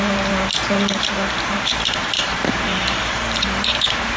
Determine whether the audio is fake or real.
fake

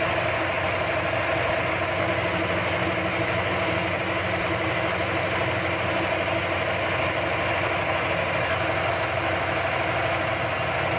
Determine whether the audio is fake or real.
real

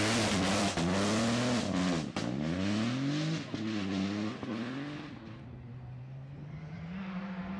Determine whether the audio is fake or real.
real